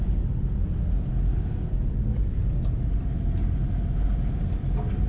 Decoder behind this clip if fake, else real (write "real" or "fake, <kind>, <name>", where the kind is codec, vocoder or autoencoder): real